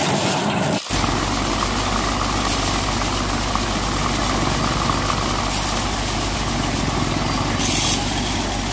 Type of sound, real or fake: real